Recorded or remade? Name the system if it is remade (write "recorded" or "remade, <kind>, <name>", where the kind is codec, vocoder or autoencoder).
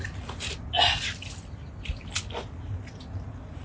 recorded